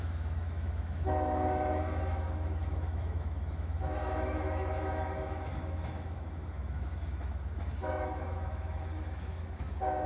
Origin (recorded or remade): remade